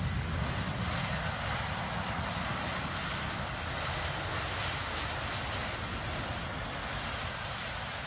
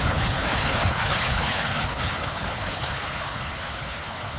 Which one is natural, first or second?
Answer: first